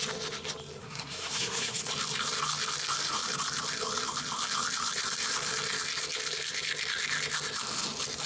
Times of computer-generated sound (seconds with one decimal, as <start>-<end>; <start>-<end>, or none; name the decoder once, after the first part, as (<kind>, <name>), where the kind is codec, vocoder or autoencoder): 0.8-1.8 (codec, SNAC)